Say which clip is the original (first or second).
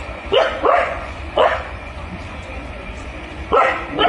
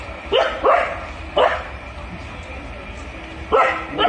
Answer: second